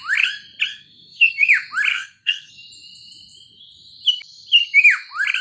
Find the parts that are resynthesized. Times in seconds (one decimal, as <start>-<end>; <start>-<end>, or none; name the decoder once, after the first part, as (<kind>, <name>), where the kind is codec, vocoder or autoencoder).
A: 0.7-1.5 (codec, SNAC); 1.9-2.5